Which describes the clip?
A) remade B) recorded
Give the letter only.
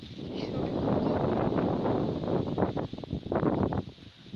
B